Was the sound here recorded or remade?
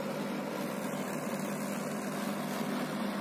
recorded